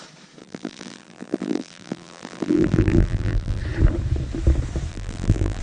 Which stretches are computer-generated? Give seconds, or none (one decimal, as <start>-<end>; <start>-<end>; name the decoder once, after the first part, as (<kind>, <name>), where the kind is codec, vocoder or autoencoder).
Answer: 0.4-3.6 (vocoder, BigVGAN v2); 4.9-5.6

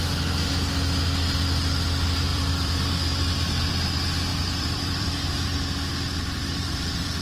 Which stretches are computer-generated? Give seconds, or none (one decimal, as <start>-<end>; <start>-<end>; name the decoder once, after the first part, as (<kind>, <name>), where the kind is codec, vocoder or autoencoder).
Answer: 2.3-3.7 (vocoder, BigVGAN v2); 4.3-5.1